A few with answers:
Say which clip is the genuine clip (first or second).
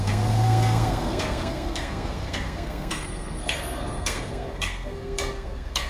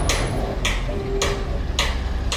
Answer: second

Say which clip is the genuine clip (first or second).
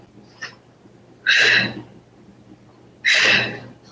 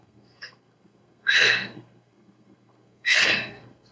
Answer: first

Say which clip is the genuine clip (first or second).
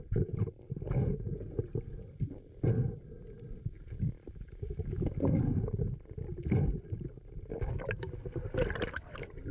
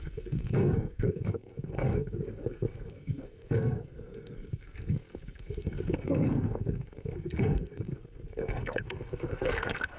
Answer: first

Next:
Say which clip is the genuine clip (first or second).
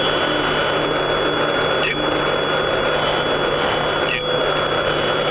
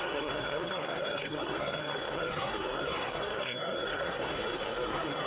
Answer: first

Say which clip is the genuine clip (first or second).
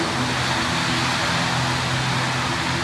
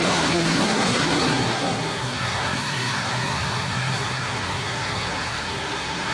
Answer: first